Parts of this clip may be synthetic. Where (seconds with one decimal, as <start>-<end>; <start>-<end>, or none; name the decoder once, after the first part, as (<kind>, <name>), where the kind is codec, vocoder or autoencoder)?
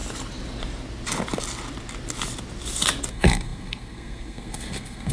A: 3.1-5.1 (codec, SNAC)